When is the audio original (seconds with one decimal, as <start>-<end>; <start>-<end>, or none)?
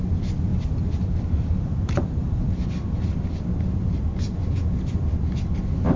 0.0-0.5; 3.5-6.0